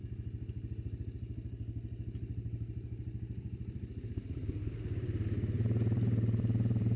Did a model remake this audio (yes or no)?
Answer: yes